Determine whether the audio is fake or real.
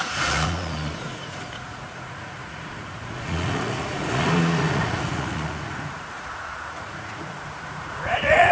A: fake